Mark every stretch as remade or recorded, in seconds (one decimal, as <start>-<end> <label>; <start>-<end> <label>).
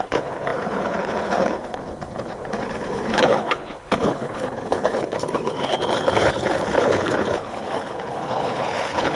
0.0-9.2 remade